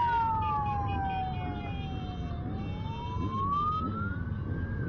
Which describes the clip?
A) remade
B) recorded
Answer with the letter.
B